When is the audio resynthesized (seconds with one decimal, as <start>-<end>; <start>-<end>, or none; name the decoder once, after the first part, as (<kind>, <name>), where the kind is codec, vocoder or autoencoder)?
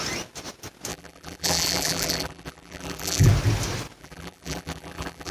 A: 0.9-3.3 (vocoder, BigVGAN v2); 4.0-5.3